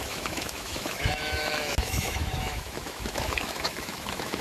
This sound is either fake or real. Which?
fake